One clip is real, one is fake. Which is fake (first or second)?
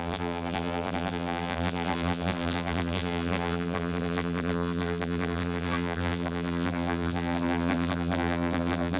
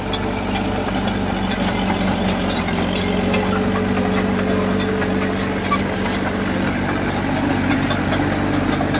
first